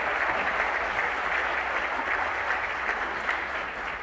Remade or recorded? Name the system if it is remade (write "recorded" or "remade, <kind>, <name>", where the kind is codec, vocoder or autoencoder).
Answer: recorded